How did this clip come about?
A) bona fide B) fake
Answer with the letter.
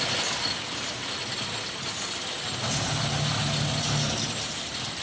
A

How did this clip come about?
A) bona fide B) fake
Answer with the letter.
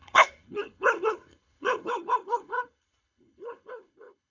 B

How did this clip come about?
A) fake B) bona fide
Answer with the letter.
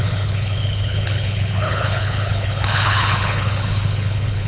A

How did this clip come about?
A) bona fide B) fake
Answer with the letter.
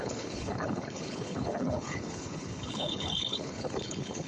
B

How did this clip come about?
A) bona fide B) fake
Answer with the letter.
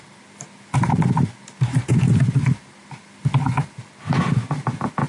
A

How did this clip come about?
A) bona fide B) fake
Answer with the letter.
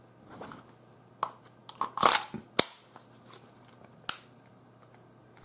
A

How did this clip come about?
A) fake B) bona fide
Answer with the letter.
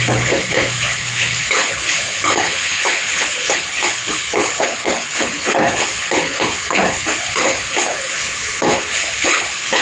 A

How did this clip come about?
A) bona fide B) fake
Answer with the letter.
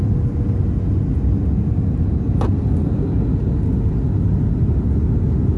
A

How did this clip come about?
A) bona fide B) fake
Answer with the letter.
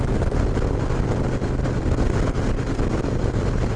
A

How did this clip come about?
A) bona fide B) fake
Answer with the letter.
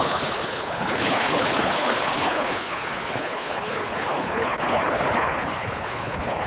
B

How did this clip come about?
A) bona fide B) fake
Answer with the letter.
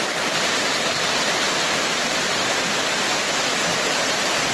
A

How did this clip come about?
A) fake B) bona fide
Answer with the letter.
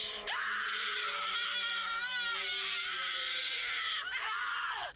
B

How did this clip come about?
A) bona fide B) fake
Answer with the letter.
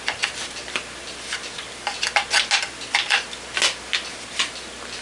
A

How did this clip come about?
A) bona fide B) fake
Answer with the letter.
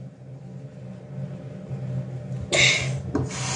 A